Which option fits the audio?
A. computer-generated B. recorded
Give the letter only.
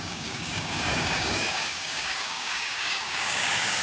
A